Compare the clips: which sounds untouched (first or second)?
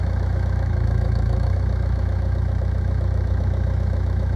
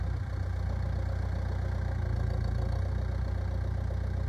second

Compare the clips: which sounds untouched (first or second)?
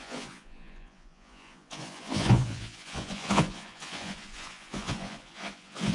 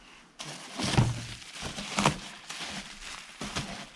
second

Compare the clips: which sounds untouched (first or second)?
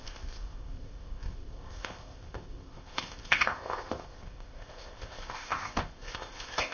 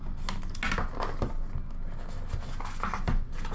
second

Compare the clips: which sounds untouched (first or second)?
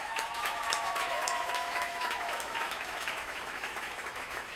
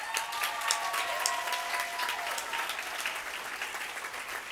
second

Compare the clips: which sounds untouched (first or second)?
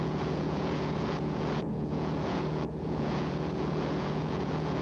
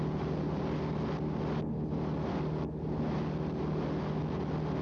second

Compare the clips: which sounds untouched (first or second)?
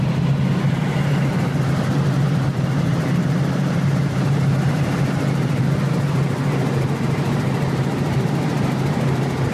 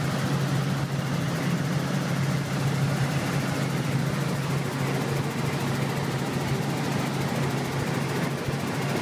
second